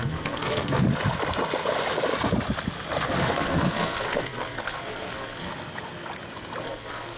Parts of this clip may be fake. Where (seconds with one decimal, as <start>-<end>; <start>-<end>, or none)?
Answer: 0.0-0.9; 3.1-5.5; 6.6-7.2